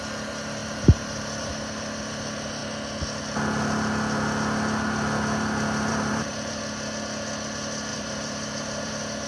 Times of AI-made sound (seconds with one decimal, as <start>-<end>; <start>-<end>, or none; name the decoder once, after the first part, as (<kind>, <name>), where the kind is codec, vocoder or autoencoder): 0.6-1.5 (vocoder, BigVGAN v2); 5.9-6.6; 7.9-8.9